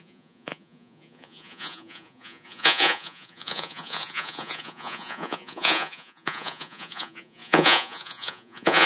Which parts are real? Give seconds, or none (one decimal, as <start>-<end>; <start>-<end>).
none